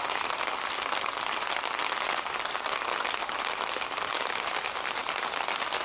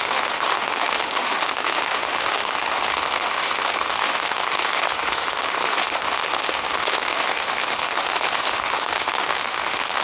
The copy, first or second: second